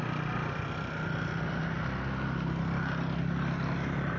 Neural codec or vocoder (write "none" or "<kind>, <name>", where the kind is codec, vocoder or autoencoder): none